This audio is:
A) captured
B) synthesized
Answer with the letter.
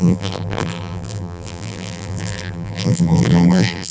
B